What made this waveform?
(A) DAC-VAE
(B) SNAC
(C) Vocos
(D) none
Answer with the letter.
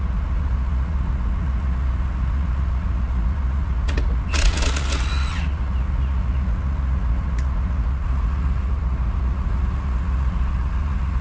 C